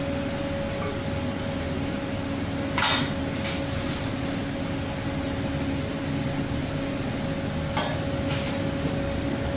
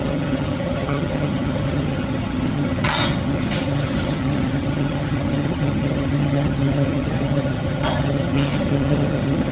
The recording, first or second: first